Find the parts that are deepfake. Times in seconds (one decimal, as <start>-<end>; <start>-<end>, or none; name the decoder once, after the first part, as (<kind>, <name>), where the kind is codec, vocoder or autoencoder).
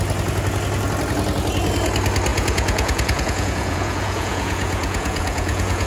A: 2.3-5.9 (vocoder, Vocos)